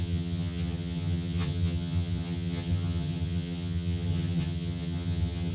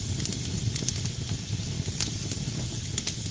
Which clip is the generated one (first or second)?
first